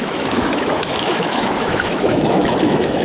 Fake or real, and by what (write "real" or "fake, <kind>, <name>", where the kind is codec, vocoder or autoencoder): fake, autoencoder, DAC-VAE